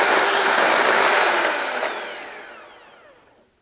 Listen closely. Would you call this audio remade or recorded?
recorded